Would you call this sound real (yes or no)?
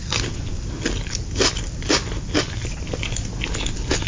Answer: yes